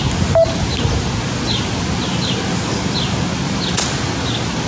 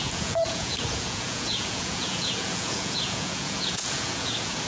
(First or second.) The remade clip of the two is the second